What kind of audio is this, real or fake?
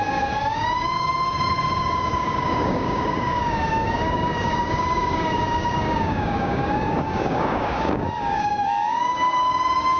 fake